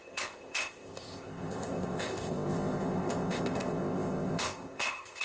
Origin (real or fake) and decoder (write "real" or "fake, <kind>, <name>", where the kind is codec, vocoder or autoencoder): fake, codec, ZipCodec